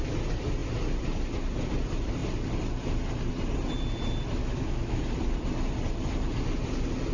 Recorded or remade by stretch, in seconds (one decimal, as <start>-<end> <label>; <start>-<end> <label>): 0.0-4.4 recorded; 4.4-5.0 remade; 5.0-7.1 recorded